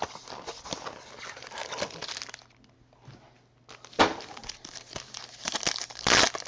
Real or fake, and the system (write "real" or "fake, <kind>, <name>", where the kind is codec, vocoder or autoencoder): real